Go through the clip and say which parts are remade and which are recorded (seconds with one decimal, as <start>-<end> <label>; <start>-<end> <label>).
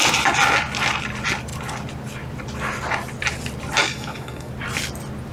0.0-3.8 recorded; 3.8-4.5 remade; 4.5-5.3 recorded